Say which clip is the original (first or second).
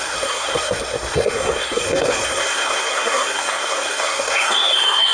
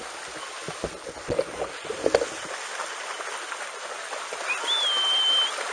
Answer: second